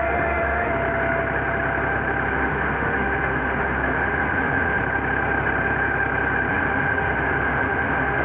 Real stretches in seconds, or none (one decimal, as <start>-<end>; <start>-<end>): 0.7-2.3; 4.8-6.5